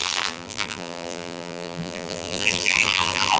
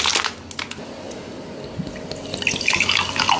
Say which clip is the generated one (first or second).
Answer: first